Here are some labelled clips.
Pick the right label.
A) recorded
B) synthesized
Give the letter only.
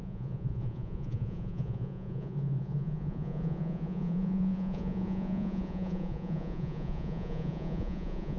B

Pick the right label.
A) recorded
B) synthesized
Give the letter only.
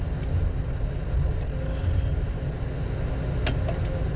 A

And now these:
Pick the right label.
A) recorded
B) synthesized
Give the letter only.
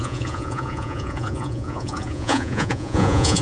B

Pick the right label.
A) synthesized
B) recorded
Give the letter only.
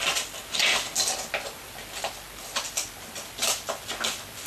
B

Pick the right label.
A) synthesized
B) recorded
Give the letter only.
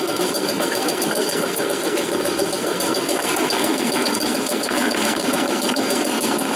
A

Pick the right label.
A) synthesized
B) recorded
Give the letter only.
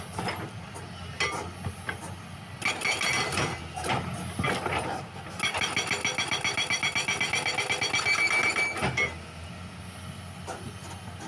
B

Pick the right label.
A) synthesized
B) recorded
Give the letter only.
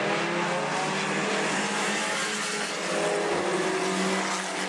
B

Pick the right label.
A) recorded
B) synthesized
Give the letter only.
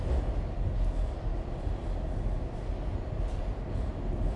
A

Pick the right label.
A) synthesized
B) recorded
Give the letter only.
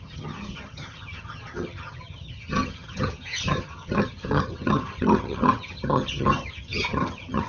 A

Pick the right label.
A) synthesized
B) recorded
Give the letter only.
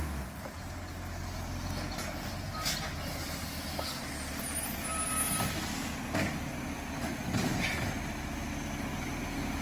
B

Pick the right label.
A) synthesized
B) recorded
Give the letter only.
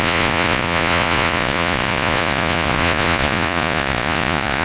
A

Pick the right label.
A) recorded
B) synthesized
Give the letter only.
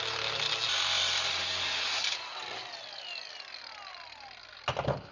A